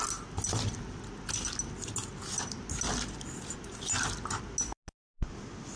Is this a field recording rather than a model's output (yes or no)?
yes